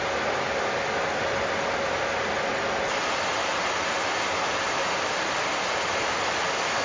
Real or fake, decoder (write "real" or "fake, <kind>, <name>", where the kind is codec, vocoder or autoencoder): real